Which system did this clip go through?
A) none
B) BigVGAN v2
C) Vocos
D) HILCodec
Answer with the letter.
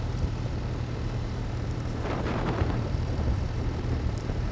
B